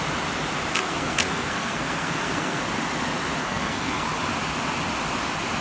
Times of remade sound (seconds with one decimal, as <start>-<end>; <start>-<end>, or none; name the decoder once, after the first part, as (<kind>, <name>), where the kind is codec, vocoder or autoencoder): 0.7-2.6 (codec, SNAC); 3.4-4.2